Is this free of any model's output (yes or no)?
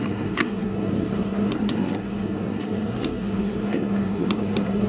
no